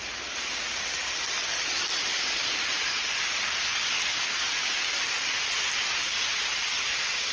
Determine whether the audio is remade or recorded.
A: recorded